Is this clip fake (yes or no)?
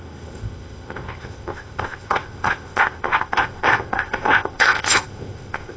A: yes